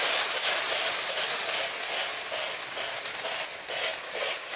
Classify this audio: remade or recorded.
recorded